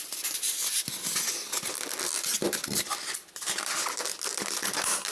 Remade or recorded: recorded